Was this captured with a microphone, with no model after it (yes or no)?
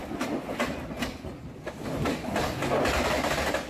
yes